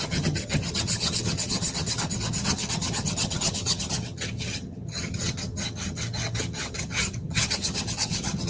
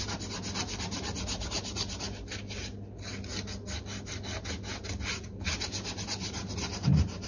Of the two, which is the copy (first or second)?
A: first